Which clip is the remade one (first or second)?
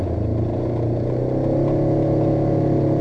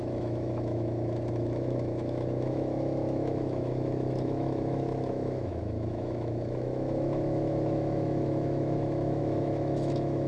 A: second